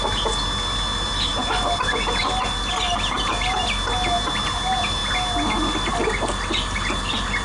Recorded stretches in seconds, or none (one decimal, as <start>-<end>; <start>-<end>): 0.0-7.4